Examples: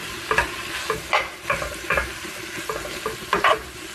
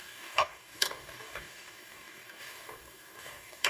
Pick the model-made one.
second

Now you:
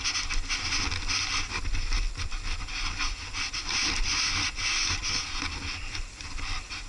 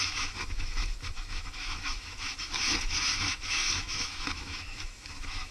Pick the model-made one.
second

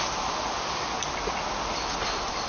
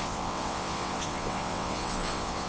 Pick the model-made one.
second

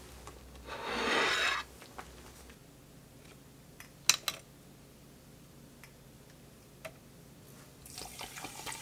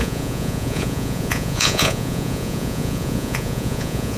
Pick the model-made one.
second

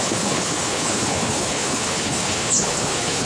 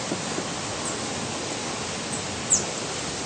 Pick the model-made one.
first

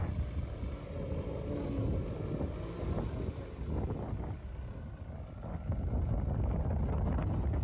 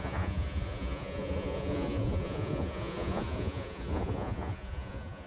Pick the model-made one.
second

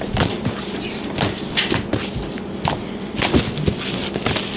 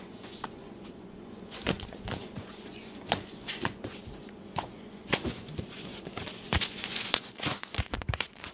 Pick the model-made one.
second